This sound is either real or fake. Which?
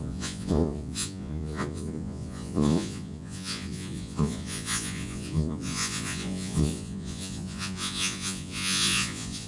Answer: fake